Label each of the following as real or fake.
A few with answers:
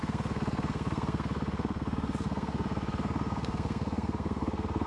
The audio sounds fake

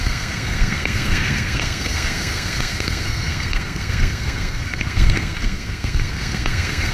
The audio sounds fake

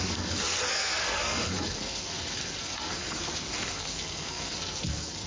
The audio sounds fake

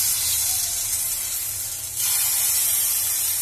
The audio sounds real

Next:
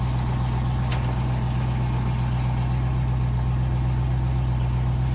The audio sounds real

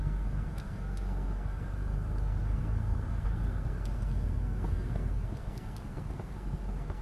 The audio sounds fake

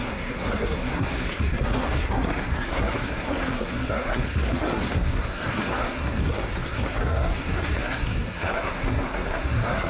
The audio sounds fake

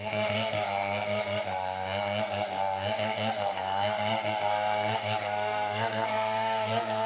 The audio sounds fake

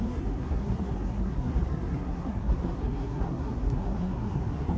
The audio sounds fake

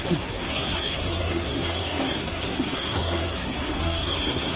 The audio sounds fake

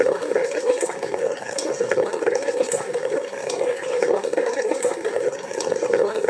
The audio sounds fake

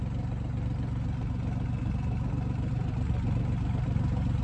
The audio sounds real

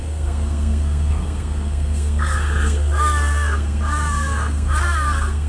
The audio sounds fake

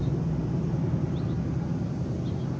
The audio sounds real